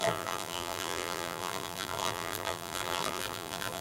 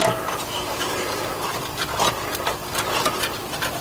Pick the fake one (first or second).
first